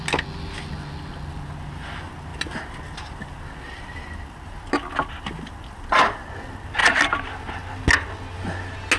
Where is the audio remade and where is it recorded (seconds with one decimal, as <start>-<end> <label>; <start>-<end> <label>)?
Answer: 0.0-9.0 recorded